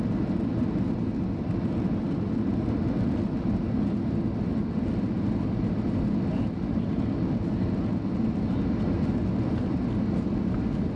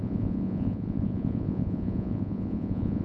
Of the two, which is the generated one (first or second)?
second